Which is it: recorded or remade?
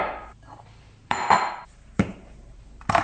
remade